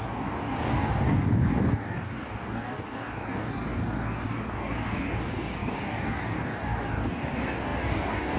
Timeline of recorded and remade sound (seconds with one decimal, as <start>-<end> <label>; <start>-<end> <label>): 0.0-8.4 remade